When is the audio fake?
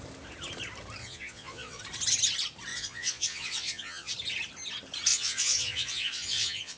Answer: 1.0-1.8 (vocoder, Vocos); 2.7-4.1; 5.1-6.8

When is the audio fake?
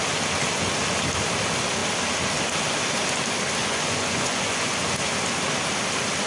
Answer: 3.6-4.7 (vocoder, Vocos)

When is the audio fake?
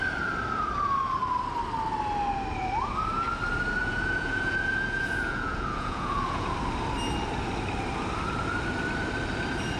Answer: 3.8-6.5 (vocoder, Vocos)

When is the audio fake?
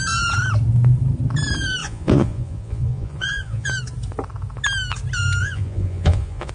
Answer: 1.8-3.8 (vocoder, Vocos); 5.4-6.5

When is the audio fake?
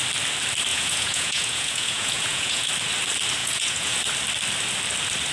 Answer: 0.7-2.7 (vocoder, Vocos); 3.4-4.0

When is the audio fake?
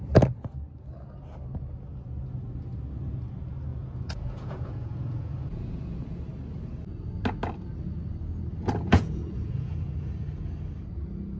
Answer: 3.7-6.2 (vocoder, Vocos); 8.9-10.1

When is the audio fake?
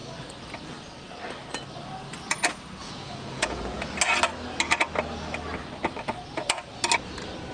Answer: 2.8-3.8 (vocoder, Vocos)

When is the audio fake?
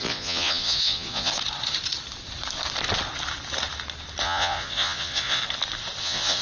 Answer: 0.0-1.3 (vocoder, Vocos); 4.2-5.4; 6.0-6.4